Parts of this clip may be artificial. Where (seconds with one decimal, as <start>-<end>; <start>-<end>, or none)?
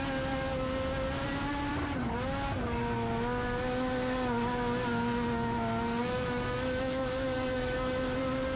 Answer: 6.0-8.2